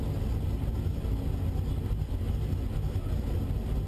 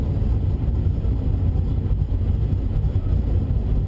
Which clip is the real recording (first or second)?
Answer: first